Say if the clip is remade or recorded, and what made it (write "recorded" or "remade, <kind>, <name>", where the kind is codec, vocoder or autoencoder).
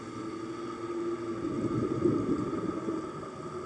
recorded